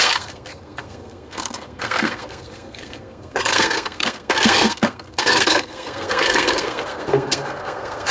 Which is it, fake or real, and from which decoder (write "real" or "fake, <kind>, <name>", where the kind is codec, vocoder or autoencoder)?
fake, codec, SNAC